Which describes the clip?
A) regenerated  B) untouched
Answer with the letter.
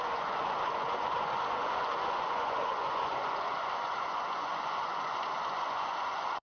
A